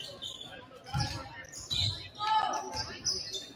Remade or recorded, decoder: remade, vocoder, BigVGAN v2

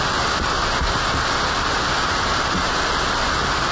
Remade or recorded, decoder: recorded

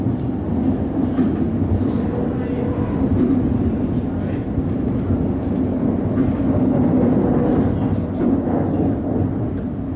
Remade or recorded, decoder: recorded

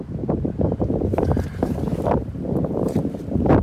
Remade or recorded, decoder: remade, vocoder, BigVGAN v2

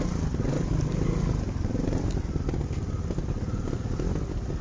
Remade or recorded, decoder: remade, vocoder, BigVGAN v2